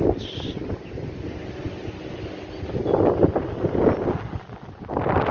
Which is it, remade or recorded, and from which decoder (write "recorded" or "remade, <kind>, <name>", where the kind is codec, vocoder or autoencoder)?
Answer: recorded